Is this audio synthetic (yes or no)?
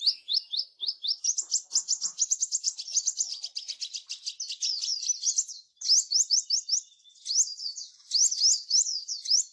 no